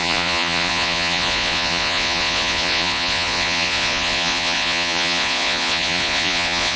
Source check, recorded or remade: remade